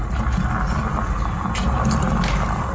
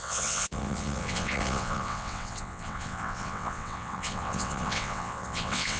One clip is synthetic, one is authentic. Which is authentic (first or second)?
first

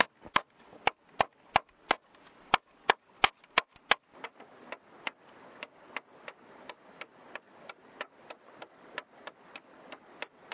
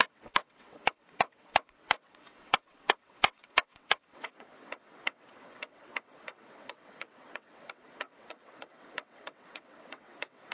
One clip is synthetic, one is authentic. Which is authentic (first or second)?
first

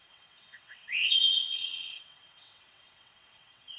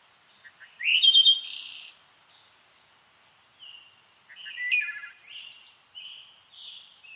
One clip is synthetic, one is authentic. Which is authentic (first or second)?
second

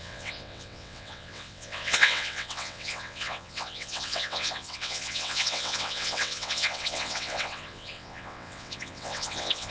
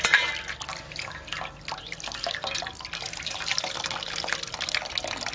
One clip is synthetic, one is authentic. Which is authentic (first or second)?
second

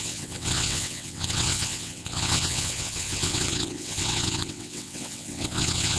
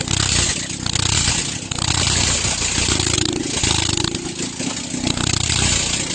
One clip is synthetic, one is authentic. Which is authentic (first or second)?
second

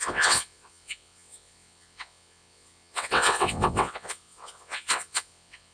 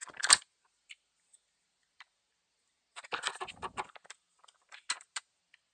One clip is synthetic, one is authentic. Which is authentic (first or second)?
second